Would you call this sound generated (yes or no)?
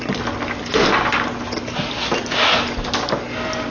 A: no